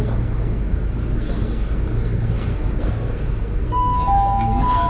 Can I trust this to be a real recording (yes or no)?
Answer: no